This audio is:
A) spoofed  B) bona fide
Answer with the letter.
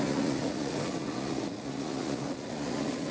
A